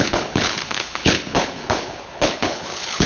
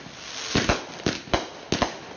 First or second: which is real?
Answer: second